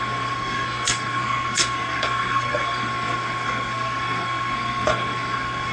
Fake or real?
fake